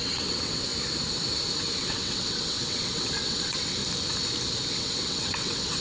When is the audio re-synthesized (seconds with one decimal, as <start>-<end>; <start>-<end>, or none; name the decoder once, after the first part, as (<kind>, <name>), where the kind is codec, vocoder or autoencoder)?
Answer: 0.0-0.7 (vocoder, WaveNeXt); 1.7-3.8; 4.7-5.8